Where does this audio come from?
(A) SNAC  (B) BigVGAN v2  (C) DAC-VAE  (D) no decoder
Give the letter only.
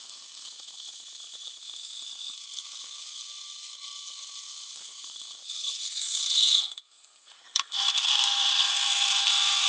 A